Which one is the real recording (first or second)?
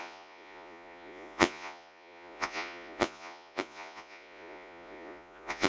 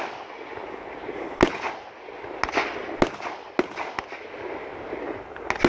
second